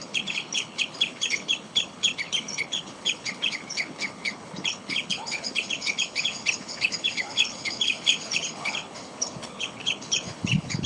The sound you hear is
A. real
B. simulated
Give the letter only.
B